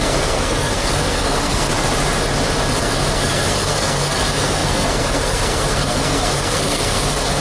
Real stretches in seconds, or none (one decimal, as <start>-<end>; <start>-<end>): 1.7-2.8